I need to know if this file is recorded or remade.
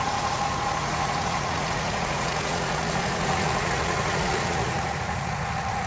remade